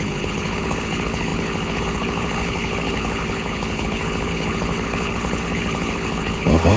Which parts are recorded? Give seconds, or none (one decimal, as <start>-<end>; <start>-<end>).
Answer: none